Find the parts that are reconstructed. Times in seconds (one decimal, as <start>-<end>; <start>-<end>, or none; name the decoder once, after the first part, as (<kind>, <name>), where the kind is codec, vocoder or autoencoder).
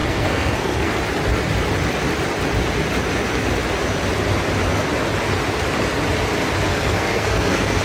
0.0-1.0 (codec, SNAC); 6.7-7.8